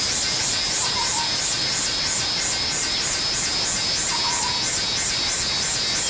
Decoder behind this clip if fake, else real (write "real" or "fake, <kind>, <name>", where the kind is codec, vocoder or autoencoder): real